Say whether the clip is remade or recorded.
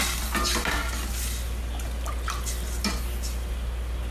recorded